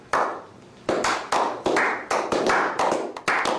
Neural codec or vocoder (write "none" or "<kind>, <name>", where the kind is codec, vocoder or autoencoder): none